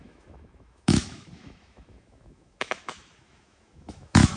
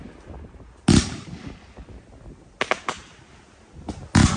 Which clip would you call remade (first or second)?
first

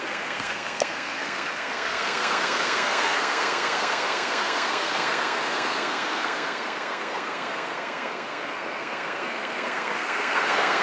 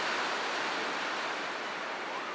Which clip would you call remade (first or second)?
first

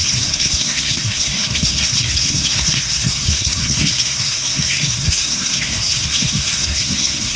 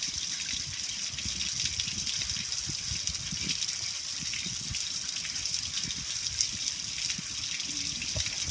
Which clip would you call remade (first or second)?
first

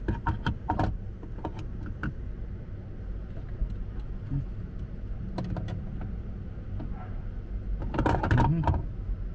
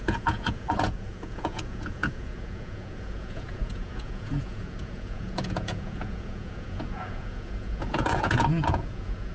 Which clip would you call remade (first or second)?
second